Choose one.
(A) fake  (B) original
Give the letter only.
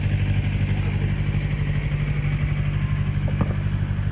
B